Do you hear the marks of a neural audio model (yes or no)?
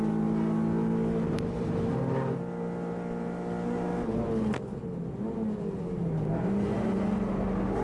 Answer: no